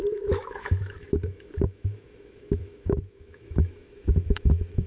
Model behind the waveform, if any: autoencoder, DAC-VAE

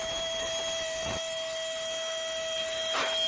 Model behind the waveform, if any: autoencoder, DAC-VAE